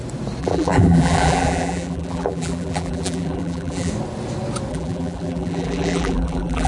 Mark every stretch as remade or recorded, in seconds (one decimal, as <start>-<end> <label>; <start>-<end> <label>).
0.0-0.4 recorded; 0.4-3.9 remade; 3.9-4.7 recorded; 4.7-6.7 remade